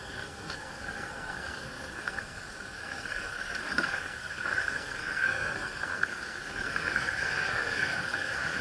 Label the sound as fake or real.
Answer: fake